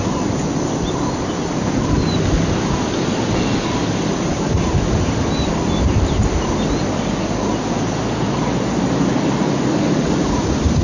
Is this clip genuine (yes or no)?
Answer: yes